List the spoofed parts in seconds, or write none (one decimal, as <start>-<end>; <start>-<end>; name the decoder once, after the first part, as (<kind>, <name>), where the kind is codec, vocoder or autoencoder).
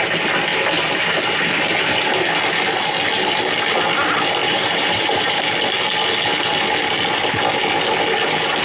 0.5-1.4 (vocoder, BigVGAN v2); 4.4-5.6